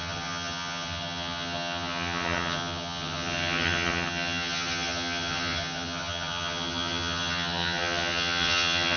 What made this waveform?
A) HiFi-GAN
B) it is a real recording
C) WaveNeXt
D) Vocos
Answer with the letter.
A